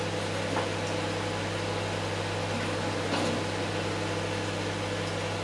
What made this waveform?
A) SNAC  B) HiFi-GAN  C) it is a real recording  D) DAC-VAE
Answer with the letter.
C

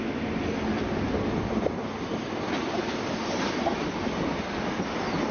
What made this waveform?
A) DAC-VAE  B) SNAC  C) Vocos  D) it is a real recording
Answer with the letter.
D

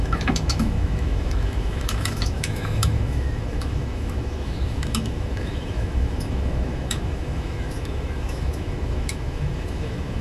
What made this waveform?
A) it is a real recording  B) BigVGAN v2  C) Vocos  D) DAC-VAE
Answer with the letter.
D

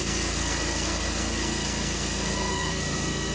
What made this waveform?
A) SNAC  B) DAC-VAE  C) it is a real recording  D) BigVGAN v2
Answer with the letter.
A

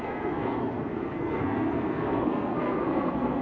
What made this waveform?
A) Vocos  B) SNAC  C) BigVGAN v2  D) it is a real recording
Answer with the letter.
B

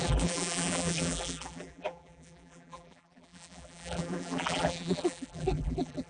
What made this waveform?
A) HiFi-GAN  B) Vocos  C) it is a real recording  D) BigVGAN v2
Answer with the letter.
D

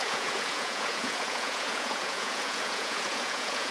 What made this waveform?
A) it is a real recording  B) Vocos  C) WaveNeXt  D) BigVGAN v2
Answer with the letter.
B